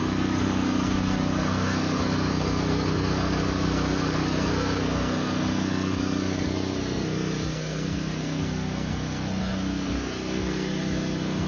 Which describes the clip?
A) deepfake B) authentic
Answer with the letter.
A